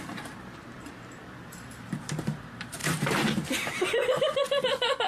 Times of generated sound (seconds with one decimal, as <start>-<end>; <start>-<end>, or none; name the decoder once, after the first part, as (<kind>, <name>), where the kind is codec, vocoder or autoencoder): 0.0-5.1 (vocoder, BigVGAN v2)